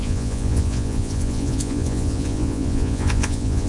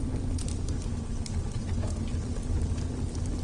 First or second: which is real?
second